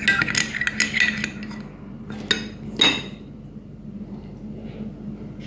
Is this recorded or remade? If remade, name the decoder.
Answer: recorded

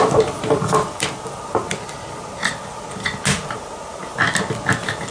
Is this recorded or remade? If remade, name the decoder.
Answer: recorded